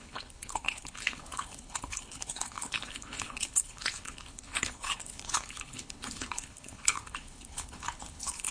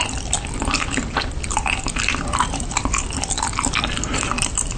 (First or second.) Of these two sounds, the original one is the second